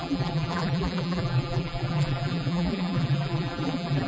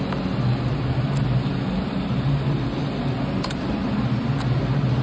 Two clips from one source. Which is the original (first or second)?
second